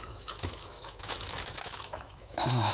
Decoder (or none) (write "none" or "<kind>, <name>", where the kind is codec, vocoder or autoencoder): autoencoder, DAC-VAE